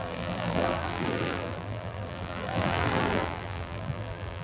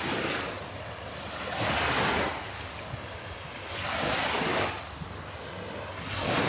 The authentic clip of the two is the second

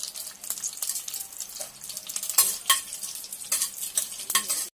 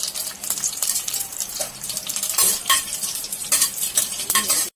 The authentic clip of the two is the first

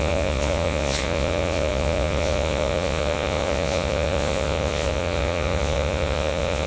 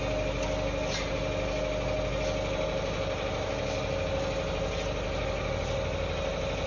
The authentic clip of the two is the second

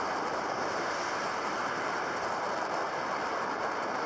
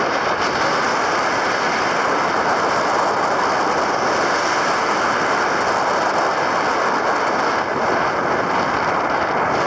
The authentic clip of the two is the second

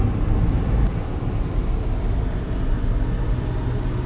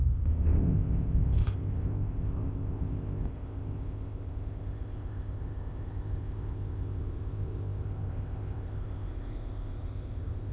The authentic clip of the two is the first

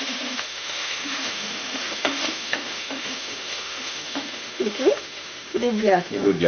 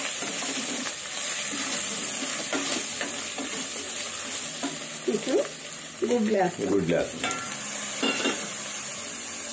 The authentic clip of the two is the second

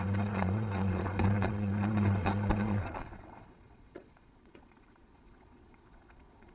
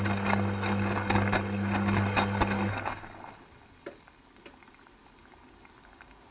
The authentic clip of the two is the second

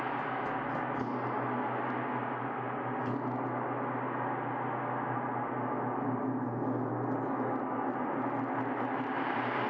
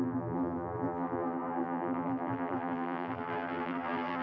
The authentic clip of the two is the first